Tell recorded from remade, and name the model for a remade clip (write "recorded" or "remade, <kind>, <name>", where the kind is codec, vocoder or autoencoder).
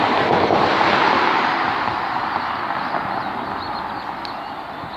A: recorded